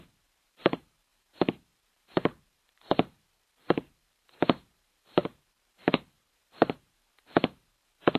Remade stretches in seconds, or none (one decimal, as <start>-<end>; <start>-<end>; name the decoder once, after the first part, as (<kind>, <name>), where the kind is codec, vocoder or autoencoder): 0.0-8.2 (vocoder, BigVGAN v2)